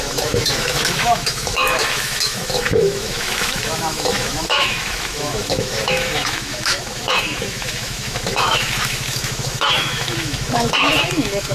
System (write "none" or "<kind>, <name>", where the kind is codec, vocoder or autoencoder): autoencoder, DAC-VAE